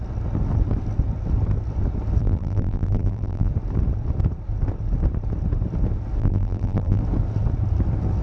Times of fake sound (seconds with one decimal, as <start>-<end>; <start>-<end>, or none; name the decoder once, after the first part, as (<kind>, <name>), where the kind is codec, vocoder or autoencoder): 2.2-3.5 (vocoder, BigVGAN v2); 6.2-7.0